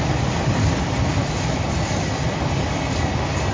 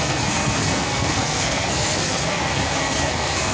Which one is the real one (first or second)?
first